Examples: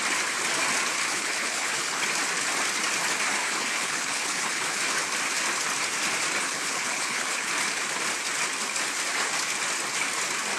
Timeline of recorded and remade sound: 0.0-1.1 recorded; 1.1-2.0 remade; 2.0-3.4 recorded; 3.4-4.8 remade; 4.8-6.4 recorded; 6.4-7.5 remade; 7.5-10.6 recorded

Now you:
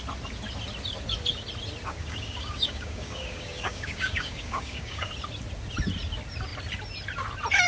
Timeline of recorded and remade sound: 0.0-2.0 recorded; 2.0-5.1 remade; 5.1-7.7 recorded